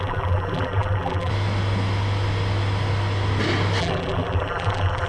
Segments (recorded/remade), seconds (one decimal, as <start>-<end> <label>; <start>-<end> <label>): 0.0-1.3 remade; 1.3-3.8 recorded; 3.8-5.1 remade